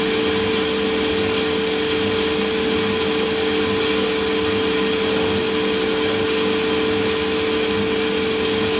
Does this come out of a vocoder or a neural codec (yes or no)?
no